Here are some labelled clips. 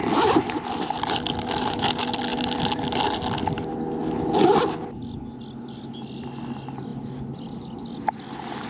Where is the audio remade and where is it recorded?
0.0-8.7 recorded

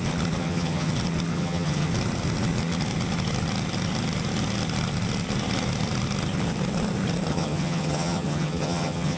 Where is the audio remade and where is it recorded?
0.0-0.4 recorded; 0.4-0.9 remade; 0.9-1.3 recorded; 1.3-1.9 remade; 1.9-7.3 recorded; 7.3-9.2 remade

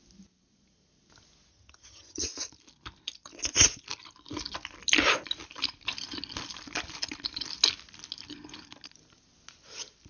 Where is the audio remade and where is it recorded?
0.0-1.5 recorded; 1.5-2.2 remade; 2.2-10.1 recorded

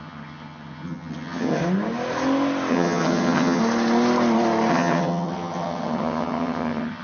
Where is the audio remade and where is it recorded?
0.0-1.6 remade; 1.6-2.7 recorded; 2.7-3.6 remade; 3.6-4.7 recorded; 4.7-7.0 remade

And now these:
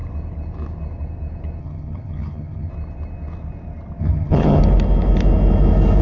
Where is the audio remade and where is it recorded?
0.0-1.6 recorded; 1.6-2.7 remade; 2.7-4.0 recorded; 4.0-4.6 remade; 4.6-6.0 recorded

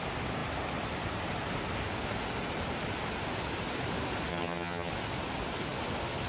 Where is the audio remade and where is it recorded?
0.0-4.3 recorded; 4.3-4.9 remade; 4.9-6.3 recorded

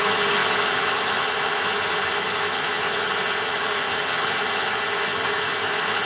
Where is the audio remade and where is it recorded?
0.0-6.1 remade